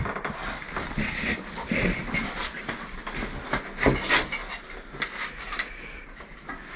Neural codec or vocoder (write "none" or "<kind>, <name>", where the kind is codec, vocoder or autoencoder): none